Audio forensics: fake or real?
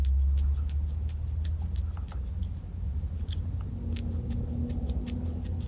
real